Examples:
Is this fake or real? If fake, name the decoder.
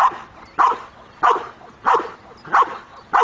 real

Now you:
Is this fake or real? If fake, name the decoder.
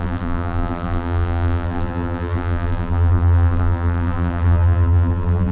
fake, vocoder, BigVGAN v2